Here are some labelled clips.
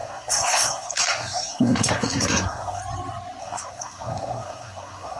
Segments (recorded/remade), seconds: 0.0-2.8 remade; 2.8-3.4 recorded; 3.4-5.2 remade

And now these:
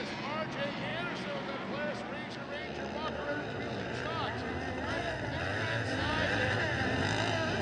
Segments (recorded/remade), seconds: 0.0-7.6 recorded

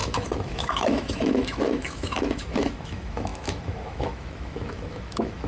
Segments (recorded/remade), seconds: 0.0-5.5 remade